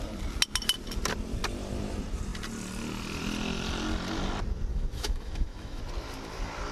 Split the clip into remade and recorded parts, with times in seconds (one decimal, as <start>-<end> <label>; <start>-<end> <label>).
0.0-4.7 recorded; 4.7-5.8 remade; 5.8-6.7 recorded